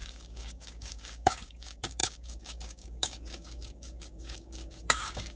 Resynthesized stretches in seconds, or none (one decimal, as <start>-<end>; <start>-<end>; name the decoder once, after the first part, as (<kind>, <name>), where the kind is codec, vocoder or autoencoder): 0.0-5.4 (codec, DAC)